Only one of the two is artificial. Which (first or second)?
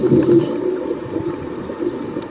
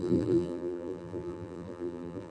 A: second